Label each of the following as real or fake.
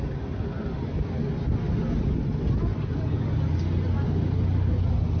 real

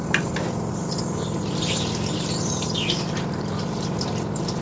real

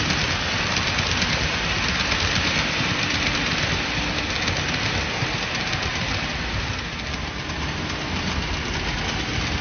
real